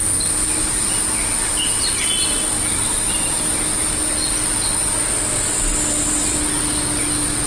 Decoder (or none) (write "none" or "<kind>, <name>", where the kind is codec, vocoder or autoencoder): none